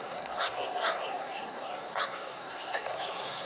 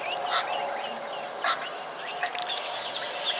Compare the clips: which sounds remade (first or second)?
first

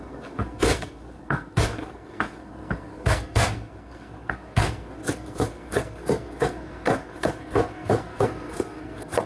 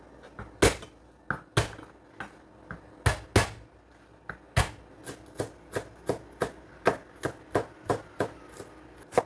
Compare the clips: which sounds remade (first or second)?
first